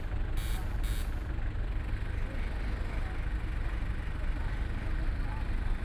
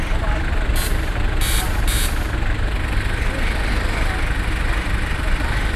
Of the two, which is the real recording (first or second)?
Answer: first